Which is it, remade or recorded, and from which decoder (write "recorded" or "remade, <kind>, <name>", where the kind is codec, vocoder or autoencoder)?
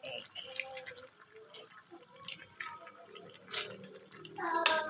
recorded